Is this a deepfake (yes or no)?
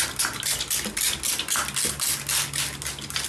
no